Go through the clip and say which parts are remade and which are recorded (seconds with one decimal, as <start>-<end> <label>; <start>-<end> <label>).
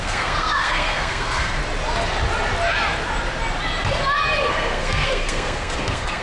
0.0-1.6 remade; 1.6-4.5 recorded; 4.5-6.2 remade